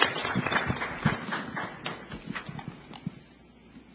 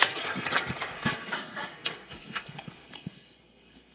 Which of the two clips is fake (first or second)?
second